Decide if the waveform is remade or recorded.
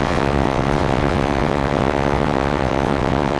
remade